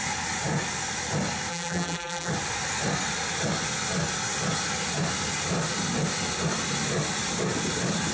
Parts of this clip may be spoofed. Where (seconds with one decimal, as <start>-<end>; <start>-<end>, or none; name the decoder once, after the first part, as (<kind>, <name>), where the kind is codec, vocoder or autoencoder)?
1.5-2.3 (vocoder, BigVGAN v2)